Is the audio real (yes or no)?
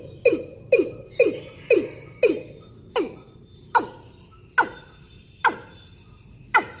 yes